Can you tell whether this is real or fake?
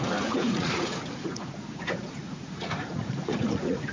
fake